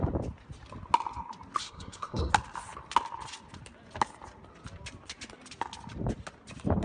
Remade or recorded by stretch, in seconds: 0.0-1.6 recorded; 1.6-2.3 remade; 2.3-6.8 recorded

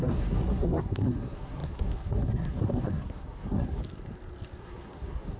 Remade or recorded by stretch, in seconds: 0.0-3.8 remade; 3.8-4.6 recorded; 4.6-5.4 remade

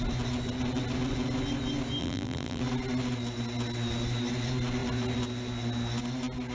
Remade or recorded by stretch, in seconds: 0.0-2.0 recorded; 2.0-2.6 remade; 2.6-6.5 recorded